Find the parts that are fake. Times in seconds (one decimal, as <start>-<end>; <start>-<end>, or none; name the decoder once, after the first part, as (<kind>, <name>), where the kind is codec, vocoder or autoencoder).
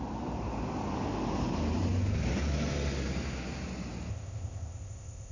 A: 4.1-5.3 (codec, ZipCodec)